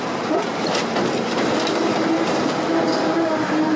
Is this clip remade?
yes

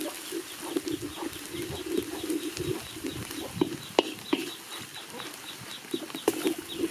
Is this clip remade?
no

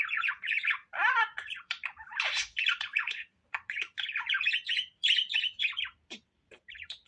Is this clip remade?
yes